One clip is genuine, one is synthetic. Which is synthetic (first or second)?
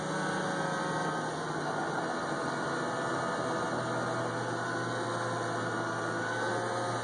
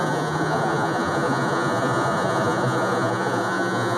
second